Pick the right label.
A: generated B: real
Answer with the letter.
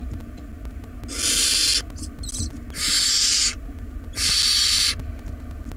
B